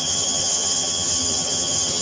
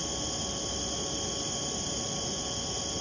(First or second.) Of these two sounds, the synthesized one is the first